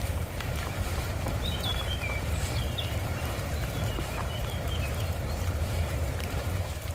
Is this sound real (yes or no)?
no